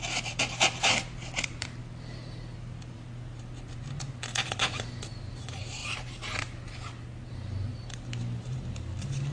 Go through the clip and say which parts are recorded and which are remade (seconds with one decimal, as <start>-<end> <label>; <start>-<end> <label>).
0.0-1.8 remade; 1.8-2.9 recorded; 2.9-9.3 remade